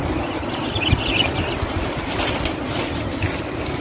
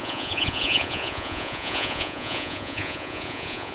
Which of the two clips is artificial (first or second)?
second